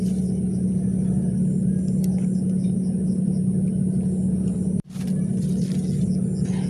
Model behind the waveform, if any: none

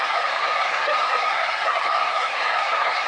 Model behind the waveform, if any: codec, SNAC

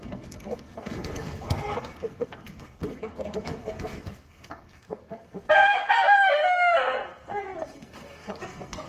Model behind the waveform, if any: codec, SNAC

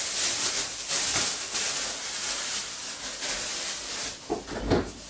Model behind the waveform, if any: none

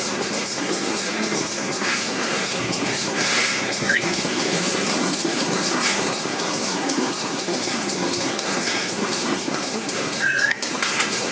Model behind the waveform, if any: codec, SNAC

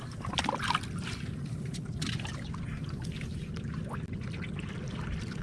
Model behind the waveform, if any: none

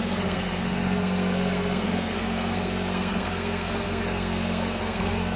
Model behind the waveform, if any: codec, SNAC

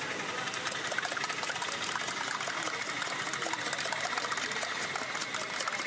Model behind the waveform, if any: none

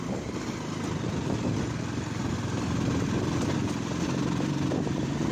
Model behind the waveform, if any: none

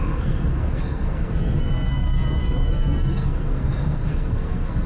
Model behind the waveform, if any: codec, SNAC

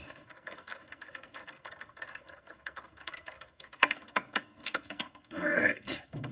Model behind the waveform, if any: codec, SNAC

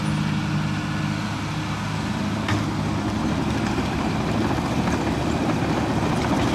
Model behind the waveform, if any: none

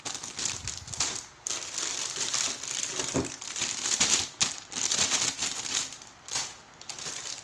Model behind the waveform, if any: none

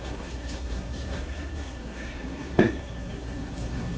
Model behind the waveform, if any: codec, SNAC